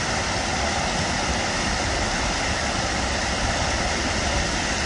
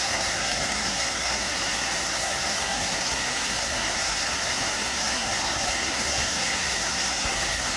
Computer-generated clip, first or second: second